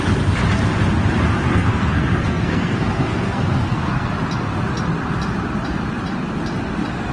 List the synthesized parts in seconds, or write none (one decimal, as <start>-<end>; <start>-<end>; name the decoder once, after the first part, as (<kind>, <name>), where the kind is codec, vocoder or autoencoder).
1.5-4.1 (codec, SNAC)